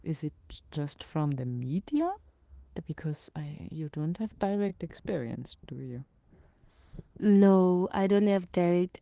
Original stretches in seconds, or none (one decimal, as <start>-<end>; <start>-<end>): 4.7-6.7